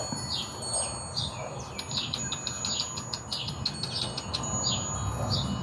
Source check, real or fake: real